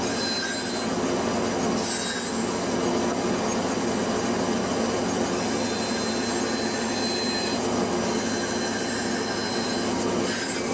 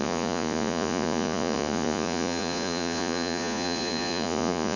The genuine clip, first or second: first